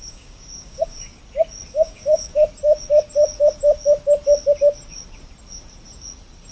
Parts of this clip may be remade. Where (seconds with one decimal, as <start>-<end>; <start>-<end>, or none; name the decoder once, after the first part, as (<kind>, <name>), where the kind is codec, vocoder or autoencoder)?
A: 0.0-1.2 (codec, DAC); 1.7-2.3